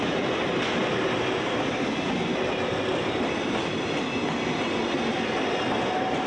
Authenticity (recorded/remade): recorded